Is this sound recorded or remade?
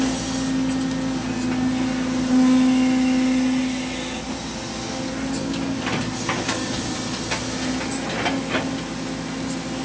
recorded